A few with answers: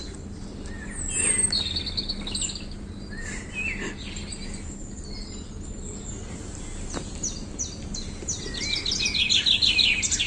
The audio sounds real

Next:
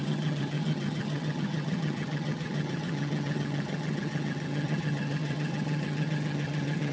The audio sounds fake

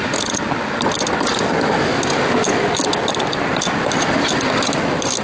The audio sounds real